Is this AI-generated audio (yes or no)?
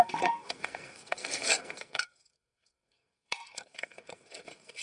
yes